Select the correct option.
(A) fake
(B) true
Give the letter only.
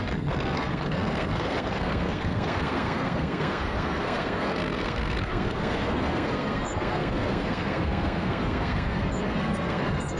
A